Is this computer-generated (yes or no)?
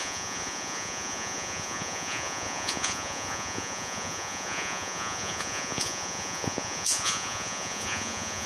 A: yes